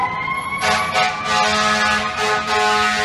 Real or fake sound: real